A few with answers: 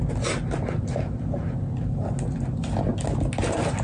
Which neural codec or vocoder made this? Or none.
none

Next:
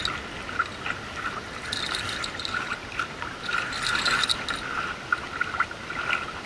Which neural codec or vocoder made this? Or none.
none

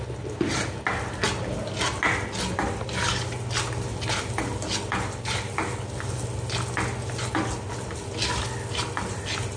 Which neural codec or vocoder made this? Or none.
none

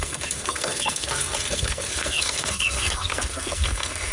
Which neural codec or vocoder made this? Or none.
codec, SNAC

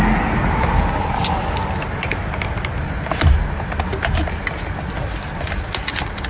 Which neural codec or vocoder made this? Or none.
none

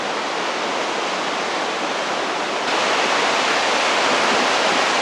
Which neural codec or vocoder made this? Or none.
none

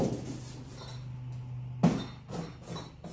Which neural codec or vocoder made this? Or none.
none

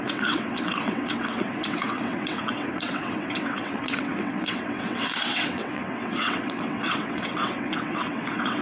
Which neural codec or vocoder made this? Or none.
vocoder, WaveNeXt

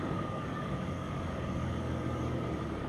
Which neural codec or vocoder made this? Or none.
codec, DAC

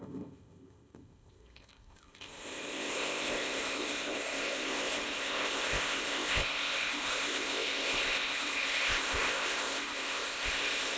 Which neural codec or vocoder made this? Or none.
codec, ZipCodec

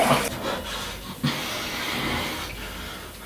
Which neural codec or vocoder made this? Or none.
none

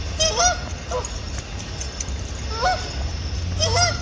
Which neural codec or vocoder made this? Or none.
none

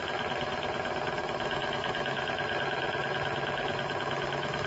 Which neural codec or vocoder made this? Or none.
none